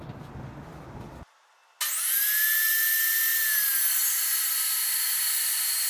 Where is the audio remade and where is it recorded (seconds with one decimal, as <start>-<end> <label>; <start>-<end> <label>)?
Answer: 0.0-5.9 recorded